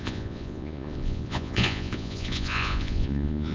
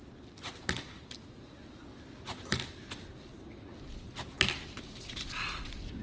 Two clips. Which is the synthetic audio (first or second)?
first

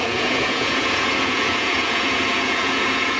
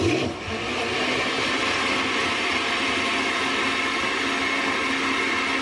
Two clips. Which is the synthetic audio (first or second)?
first